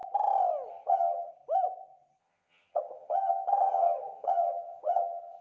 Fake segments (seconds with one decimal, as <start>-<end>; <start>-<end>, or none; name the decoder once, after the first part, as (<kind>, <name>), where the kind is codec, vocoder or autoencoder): 0.7-1.3 (vocoder, HiFi-GAN); 2.2-5.4